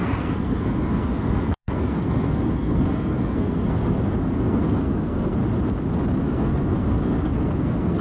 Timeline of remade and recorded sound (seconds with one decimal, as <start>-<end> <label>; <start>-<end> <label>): 0.0-5.4 remade; 5.4-6.2 recorded; 6.2-8.0 remade